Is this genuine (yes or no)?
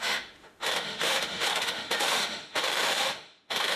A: no